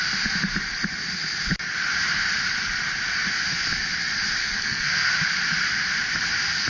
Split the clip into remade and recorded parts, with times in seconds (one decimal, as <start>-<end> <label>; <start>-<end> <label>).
0.0-4.4 recorded; 4.4-5.1 remade; 5.1-6.7 recorded